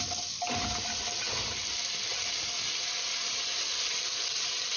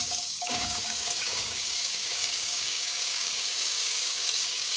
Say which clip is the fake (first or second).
second